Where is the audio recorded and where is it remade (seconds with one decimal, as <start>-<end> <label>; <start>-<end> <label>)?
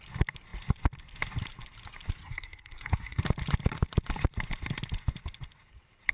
0.0-2.2 recorded; 2.2-3.2 remade; 3.2-6.1 recorded